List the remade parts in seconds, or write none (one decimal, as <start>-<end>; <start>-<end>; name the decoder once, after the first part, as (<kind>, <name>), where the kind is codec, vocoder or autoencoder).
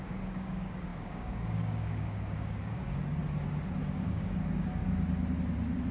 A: 0.0-3.2 (codec, DAC); 3.9-4.8